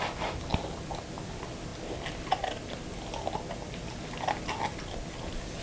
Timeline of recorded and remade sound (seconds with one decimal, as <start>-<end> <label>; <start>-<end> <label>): 0.0-5.6 recorded

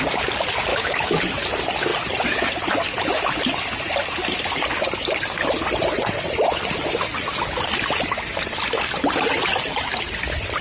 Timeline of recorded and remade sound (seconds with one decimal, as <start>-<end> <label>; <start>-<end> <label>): 0.0-0.7 recorded; 0.7-1.2 remade; 1.2-10.6 recorded

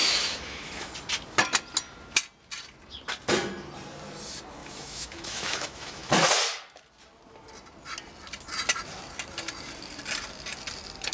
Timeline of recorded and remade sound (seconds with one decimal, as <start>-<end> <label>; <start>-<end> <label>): 0.0-0.9 remade; 0.9-4.6 recorded; 4.6-6.1 remade; 6.1-11.1 recorded